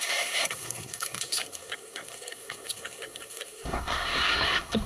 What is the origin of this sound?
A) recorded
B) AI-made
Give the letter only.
B